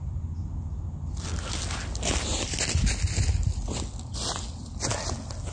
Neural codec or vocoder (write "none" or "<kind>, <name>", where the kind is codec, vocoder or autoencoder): none